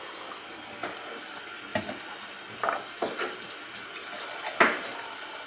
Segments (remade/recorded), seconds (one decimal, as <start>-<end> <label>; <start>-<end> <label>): 0.0-5.5 recorded

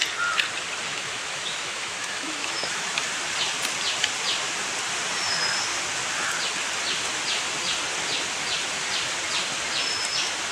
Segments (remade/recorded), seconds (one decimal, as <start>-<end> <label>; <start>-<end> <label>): 0.0-0.9 recorded; 0.9-3.0 remade; 3.0-10.5 recorded

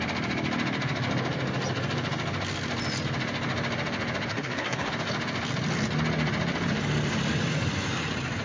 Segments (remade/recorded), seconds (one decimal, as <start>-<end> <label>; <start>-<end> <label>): 0.0-4.3 recorded; 4.3-4.9 remade; 4.9-8.4 recorded

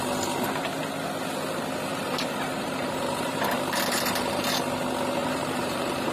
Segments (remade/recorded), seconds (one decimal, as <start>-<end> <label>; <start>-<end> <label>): 0.0-1.9 recorded; 1.9-4.3 remade; 4.3-5.2 recorded; 5.2-6.1 remade

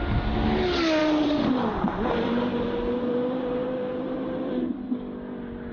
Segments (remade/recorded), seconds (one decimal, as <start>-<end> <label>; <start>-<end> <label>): 0.0-1.0 recorded; 1.0-4.4 remade; 4.4-5.7 recorded

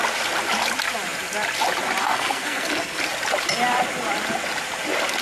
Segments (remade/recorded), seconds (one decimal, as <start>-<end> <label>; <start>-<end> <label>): 0.0-2.0 recorded; 2.0-3.0 remade; 3.0-5.2 recorded

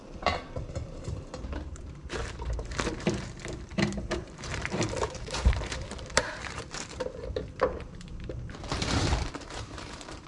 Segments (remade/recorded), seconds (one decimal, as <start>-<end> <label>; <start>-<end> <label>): 0.0-10.3 remade